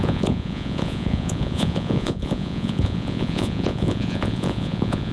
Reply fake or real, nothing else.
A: fake